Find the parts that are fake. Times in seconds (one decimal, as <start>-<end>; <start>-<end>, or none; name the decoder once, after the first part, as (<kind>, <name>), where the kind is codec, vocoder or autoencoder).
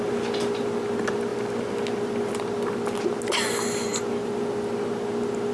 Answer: none